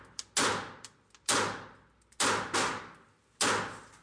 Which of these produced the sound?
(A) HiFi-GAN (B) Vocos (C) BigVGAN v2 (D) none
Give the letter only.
D